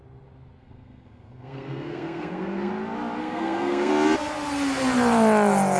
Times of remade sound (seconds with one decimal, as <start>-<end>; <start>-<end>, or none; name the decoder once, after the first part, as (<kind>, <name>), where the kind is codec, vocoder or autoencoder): 0.6-2.7 (codec, SNAC); 3.2-3.9